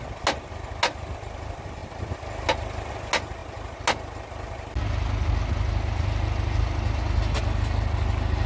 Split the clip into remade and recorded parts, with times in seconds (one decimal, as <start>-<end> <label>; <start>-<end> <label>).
0.0-8.5 recorded